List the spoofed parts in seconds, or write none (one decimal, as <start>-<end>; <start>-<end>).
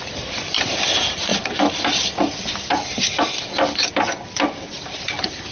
none